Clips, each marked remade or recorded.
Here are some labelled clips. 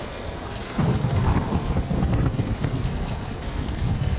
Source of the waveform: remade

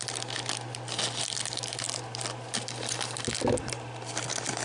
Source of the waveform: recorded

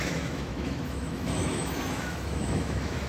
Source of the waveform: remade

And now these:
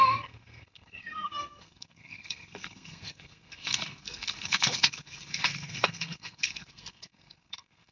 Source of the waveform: remade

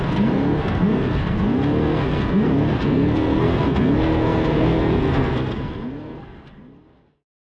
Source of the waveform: remade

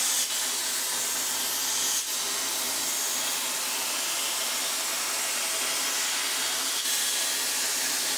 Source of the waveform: recorded